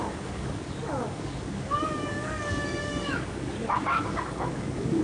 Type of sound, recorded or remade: remade